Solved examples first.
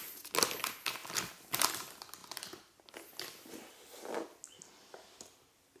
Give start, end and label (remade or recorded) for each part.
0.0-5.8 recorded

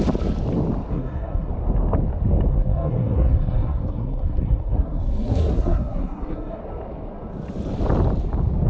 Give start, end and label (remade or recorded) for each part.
0.0-0.9 recorded; 0.9-1.5 remade; 1.5-2.5 recorded; 2.5-6.6 remade; 6.6-8.7 recorded

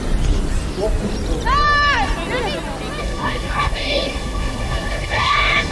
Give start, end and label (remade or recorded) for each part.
0.0-3.0 recorded; 3.0-5.7 remade

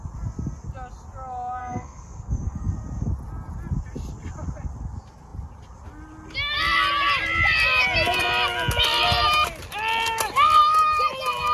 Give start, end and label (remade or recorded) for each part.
0.0-1.6 recorded; 1.6-2.7 remade; 2.7-11.5 recorded